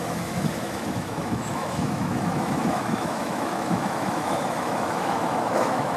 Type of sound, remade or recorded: remade